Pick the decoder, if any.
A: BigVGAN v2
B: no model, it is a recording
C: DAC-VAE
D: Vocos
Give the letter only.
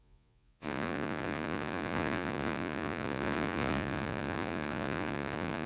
D